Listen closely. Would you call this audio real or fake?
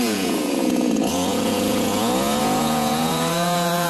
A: fake